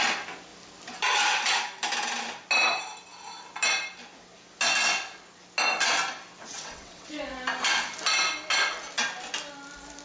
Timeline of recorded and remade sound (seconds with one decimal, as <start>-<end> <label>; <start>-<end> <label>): 0.0-6.4 recorded; 6.4-7.2 remade; 7.2-10.0 recorded